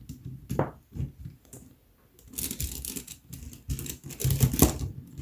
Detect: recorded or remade recorded